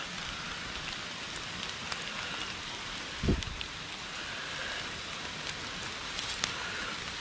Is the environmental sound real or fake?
real